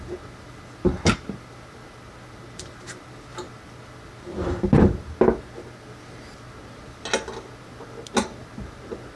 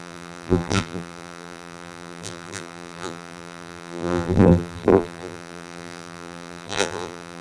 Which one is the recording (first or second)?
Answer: first